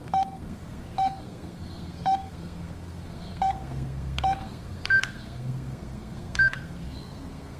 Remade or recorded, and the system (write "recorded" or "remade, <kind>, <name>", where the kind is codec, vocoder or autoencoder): remade, codec, SNAC